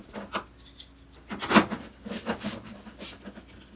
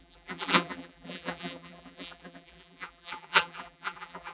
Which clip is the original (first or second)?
first